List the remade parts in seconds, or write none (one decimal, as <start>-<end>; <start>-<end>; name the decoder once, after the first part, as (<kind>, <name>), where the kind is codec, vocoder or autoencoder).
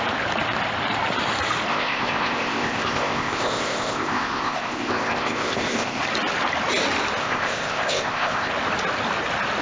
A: 1.7-6.0 (codec, ZipCodec); 7.2-8.5